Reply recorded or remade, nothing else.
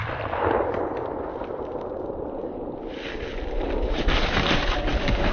recorded